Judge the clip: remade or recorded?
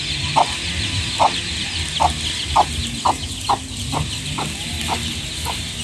recorded